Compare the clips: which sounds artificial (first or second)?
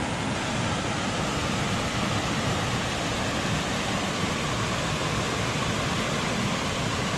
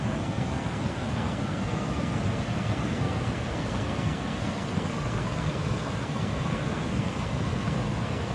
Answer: second